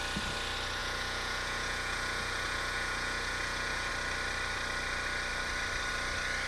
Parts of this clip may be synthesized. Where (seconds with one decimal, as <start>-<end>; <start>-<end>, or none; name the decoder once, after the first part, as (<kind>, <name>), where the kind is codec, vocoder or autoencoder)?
0.8-3.9 (vocoder, Vocos)